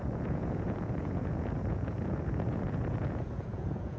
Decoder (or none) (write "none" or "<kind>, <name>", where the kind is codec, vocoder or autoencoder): vocoder, Vocos